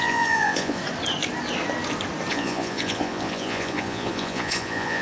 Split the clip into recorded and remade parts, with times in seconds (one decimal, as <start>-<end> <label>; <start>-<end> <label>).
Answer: 0.0-0.8 remade; 0.8-2.3 recorded; 2.3-5.0 remade